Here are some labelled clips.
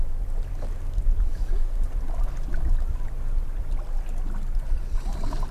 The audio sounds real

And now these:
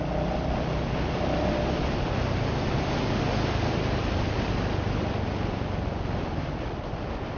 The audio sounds real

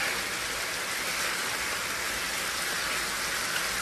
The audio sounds real